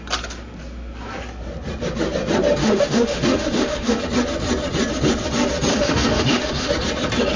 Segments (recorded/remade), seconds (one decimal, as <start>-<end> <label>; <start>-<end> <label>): 0.0-2.6 recorded; 2.6-4.0 remade; 4.0-5.7 recorded; 5.7-6.7 remade; 6.7-7.4 recorded